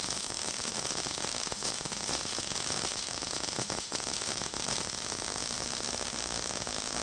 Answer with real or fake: fake